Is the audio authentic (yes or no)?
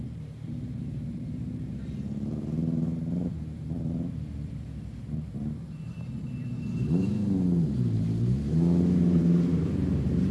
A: no